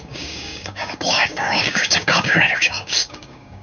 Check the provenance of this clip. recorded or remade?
remade